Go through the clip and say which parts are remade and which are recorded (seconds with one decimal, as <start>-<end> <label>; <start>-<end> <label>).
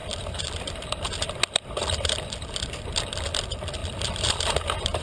0.0-2.8 remade; 2.8-3.8 recorded; 3.8-5.0 remade